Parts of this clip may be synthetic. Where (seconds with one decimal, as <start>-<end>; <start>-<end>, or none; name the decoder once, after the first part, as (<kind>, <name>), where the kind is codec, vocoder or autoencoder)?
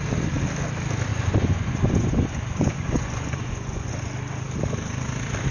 1.1-3.9 (vocoder, Vocos)